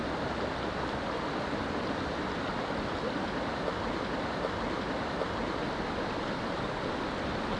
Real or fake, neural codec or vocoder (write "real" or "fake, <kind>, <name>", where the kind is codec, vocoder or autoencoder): real